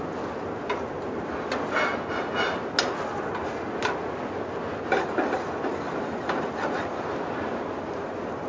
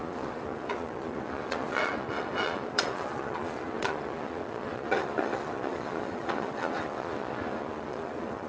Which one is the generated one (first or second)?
second